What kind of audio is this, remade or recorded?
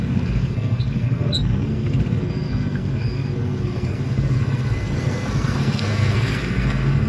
remade